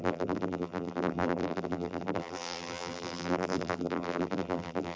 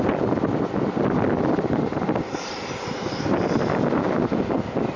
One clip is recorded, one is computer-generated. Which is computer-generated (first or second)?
first